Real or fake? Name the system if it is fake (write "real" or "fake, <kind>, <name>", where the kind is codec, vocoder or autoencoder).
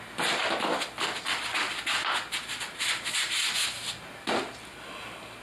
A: real